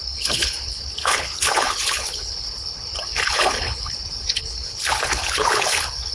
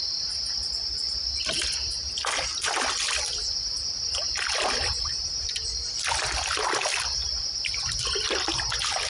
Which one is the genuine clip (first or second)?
second